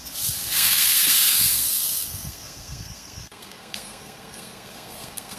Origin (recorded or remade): remade